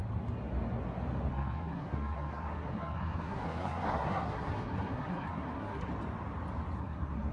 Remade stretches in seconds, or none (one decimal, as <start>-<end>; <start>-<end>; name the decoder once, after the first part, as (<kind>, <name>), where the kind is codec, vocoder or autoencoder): 1.3-5.9 (codec, SNAC); 6.8-7.3